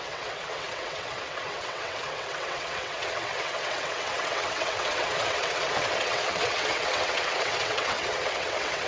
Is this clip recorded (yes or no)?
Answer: no